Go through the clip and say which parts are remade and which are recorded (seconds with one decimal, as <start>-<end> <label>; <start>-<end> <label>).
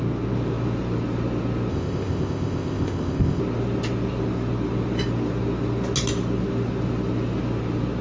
0.0-1.7 recorded; 1.7-3.4 remade; 3.4-8.0 recorded